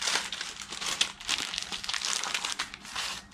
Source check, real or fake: real